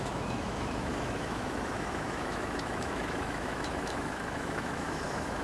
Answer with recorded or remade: remade